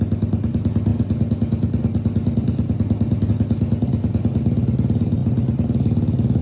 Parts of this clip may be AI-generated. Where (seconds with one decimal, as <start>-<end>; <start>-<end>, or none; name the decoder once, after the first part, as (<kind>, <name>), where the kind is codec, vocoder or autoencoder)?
none